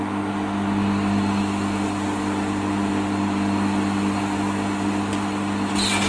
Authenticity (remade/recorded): recorded